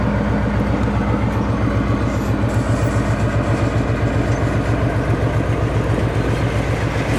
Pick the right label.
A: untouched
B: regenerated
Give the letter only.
A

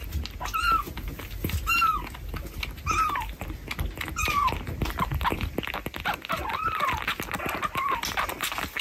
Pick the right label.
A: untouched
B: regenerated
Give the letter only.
A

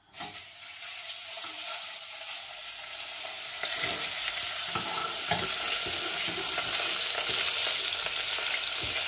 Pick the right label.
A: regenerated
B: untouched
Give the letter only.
B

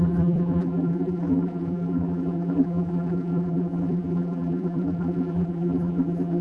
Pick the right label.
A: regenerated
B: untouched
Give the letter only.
A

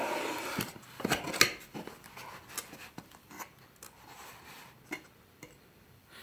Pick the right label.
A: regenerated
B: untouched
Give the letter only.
A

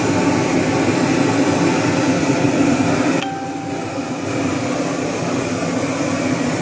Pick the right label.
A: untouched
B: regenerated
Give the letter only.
B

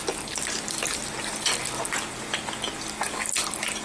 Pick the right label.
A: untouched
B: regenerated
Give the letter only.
A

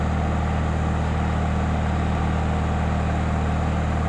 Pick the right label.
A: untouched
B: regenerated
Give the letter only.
B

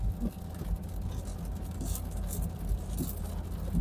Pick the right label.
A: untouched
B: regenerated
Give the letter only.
A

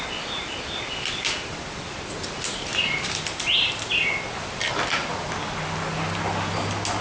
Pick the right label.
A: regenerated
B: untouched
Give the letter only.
B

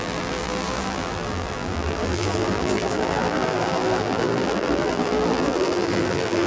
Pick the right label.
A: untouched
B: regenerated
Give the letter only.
B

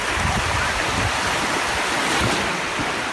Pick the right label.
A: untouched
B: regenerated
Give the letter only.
B